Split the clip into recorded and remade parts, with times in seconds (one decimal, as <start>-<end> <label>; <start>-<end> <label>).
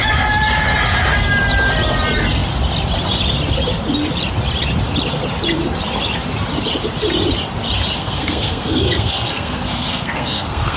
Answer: 0.0-8.0 recorded; 8.0-10.8 remade